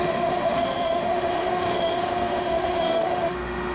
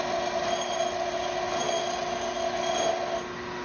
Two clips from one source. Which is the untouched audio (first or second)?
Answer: second